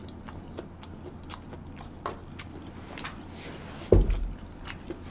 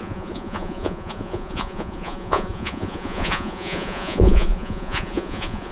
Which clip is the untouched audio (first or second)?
first